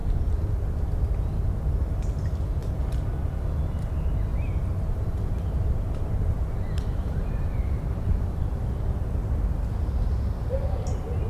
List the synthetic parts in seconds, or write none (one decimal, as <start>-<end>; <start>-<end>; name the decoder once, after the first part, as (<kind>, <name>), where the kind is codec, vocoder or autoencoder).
0.0-0.5 (vocoder, BigVGAN v2); 4.3-8.9